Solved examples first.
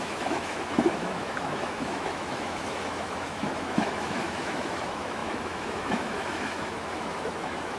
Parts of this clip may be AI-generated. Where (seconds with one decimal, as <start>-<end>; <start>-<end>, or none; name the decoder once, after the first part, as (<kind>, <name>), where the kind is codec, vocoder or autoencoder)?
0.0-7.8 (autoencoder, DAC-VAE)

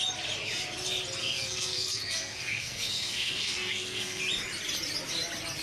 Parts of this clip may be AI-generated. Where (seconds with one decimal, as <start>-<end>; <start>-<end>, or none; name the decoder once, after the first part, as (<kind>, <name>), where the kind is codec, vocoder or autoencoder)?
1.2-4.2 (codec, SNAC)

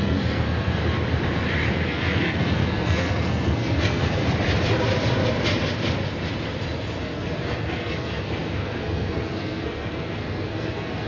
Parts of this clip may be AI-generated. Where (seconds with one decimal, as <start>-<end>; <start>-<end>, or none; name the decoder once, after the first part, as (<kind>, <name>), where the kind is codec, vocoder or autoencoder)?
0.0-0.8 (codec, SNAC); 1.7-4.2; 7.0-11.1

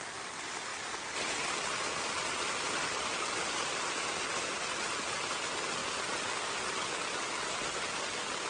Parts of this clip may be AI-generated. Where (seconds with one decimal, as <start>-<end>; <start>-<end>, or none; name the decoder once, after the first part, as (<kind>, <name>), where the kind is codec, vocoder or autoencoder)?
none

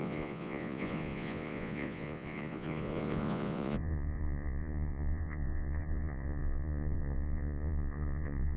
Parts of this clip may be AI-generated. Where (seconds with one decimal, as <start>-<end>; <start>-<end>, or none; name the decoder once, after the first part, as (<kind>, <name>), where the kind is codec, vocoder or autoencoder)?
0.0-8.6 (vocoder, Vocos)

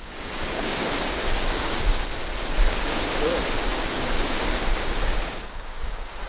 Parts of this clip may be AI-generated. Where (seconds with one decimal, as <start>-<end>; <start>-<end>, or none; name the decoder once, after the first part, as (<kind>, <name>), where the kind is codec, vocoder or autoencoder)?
0.0-2.2 (codec, DAC); 2.7-3.3; 3.9-6.3

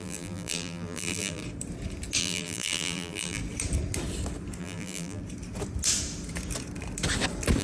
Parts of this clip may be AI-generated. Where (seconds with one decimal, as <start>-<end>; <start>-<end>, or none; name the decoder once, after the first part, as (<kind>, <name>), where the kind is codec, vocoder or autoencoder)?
0.0-1.4 (vocoder, BigVGAN v2); 2.2-3.4; 4.6-5.2